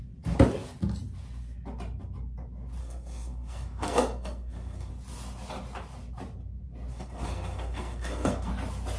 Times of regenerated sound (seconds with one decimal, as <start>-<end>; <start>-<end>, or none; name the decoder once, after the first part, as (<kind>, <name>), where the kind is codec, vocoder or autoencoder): 2.8-4.9 (codec, SNAC); 6.9-8.5